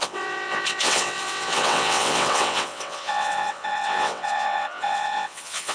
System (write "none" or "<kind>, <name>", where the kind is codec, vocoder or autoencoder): vocoder, WaveNeXt